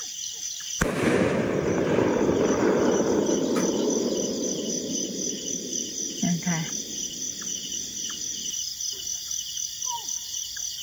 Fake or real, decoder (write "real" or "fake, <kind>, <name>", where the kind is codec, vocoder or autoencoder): real